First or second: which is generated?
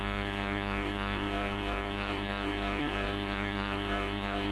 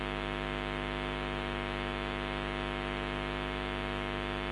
first